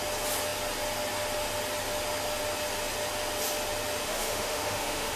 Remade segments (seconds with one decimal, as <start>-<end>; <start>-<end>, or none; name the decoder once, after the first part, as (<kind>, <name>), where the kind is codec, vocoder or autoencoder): 4.0-5.2 (autoencoder, DAC-VAE)